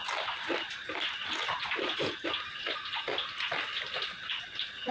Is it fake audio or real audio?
real